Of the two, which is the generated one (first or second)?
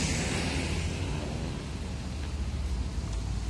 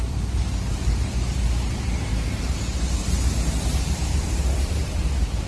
second